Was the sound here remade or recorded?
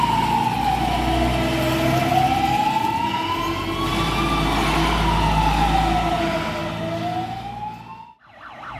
recorded